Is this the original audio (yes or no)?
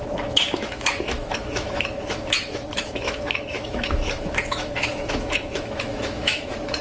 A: no